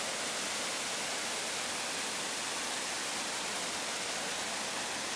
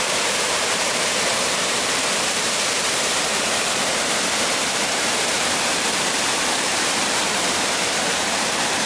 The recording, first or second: first